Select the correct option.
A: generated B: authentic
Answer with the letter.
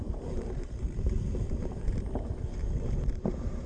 A